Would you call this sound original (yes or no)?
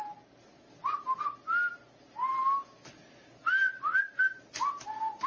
yes